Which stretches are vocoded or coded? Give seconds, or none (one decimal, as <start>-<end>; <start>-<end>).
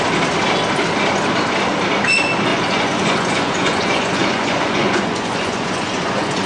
2.5-6.5